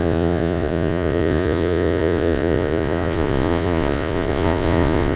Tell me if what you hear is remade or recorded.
remade